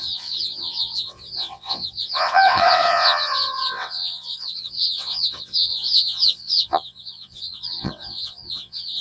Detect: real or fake fake